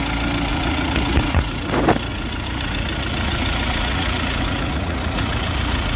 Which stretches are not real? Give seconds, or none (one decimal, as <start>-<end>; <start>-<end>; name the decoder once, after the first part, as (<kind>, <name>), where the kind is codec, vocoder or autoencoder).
0.5-1.7 (vocoder, Vocos); 2.1-6.0